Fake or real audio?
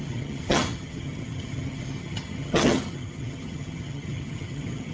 fake